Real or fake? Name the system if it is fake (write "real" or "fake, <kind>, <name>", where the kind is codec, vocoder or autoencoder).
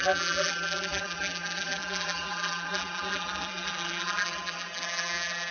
fake, vocoder, BigVGAN v2